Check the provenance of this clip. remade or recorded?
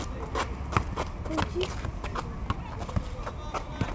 recorded